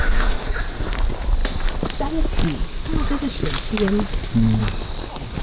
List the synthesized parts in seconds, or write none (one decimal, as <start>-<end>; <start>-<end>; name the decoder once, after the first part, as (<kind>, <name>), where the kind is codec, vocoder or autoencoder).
0.0-0.5 (autoencoder, DAC-VAE)